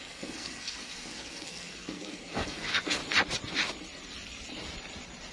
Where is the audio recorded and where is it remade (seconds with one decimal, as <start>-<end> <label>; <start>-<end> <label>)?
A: 0.0-3.0 remade; 3.0-5.3 recorded